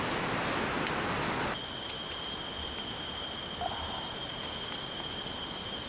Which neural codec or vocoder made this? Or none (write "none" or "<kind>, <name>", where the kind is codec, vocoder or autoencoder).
none